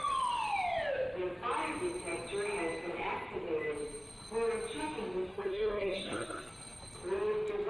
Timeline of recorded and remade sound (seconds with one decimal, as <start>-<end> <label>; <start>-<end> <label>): 0.0-5.3 recorded; 5.3-6.5 remade; 6.5-7.7 recorded